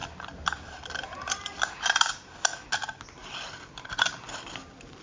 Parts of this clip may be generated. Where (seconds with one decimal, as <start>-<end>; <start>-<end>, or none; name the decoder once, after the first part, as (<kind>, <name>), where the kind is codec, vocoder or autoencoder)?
0.0-2.1 (vocoder, BigVGAN v2); 3.2-5.0